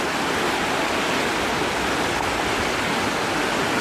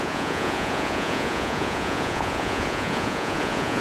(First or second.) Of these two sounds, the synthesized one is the second